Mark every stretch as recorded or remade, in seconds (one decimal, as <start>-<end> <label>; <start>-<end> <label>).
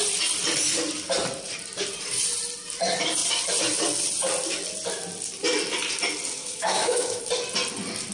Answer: 0.0-6.4 recorded; 6.4-7.2 remade; 7.2-8.1 recorded